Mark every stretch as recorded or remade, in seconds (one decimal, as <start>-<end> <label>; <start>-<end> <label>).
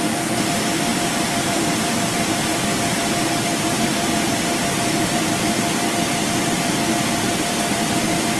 0.0-8.4 remade